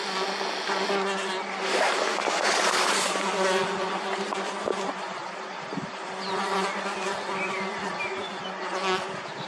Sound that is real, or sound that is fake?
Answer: real